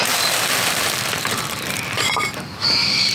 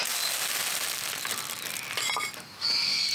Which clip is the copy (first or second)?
first